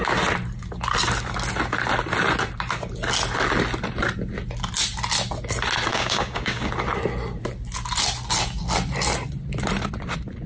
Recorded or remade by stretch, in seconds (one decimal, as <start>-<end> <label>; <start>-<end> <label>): 0.0-5.9 recorded; 5.9-6.7 remade; 6.7-10.5 recorded